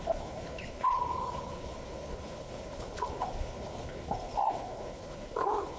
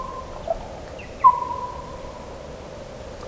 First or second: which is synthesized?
first